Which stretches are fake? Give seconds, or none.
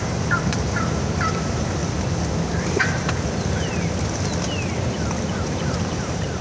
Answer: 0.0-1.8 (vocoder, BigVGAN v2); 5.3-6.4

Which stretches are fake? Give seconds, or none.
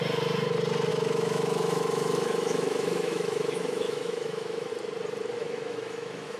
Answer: 0.9-4.7 (autoencoder, DAC-VAE); 5.3-6.4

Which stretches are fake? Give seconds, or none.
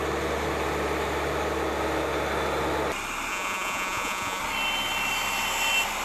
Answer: 3.3-4.4 (vocoder, Vocos)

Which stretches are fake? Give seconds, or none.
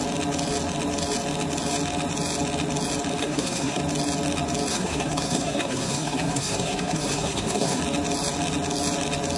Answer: 3.2-3.8 (codec, SNAC); 4.7-7.8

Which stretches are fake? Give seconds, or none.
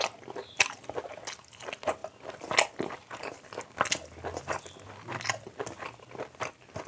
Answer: none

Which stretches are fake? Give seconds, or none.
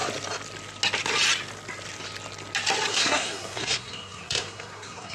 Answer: 2.9-5.1 (codec, SNAC)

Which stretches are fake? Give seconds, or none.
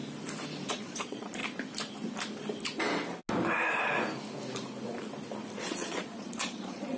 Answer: 0.7-1.4 (vocoder, Vocos); 5.6-7.0